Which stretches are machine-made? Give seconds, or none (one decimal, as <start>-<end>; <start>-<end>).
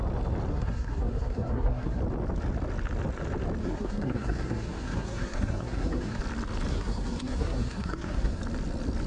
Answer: 0.5-2.0; 3.6-6.2; 6.7-8.4